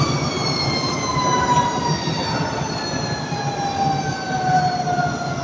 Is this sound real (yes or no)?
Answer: yes